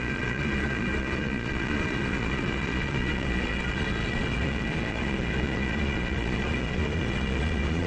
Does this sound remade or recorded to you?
remade